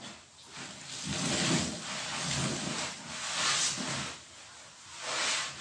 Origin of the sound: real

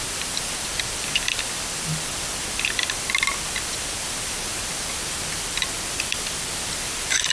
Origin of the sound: fake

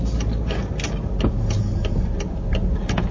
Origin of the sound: real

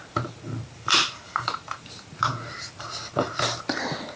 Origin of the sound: fake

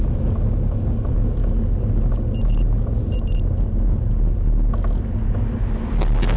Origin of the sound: real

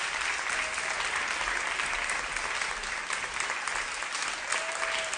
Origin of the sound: real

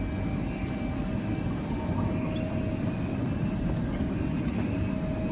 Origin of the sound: real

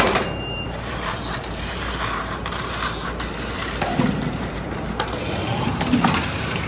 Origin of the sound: fake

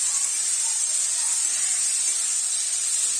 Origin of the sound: real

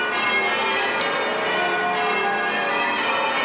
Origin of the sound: real